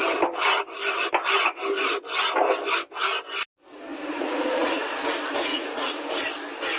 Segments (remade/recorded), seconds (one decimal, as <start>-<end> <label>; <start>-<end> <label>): 0.0-3.9 recorded; 3.9-5.0 remade; 5.0-5.5 recorded; 5.5-6.1 remade; 6.1-6.8 recorded